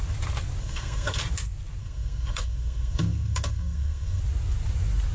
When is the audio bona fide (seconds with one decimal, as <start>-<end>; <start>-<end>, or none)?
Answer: 0.0-0.6; 1.2-1.8; 4.2-5.1